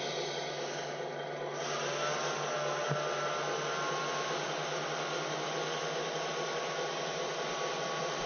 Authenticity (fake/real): real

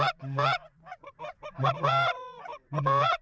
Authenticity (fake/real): fake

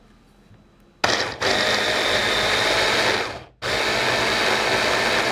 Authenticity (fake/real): real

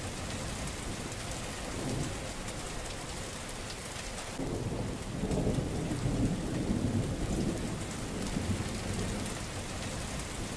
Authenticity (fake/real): real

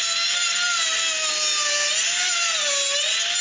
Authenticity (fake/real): real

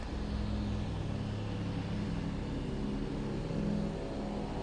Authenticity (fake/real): real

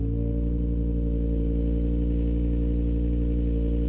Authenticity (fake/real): real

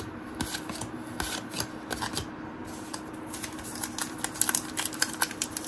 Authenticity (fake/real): real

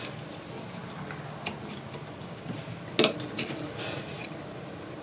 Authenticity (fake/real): real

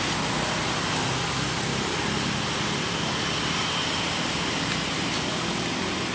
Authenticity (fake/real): real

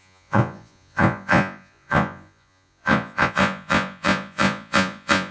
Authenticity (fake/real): fake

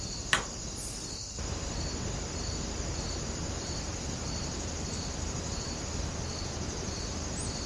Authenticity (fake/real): real